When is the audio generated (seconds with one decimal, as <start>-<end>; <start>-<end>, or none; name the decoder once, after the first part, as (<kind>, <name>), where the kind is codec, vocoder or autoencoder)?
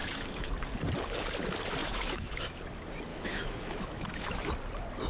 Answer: 0.0-0.5 (autoencoder, DAC-VAE); 1.8-2.6; 3.1-4.5